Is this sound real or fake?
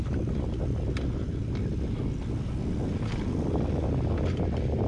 real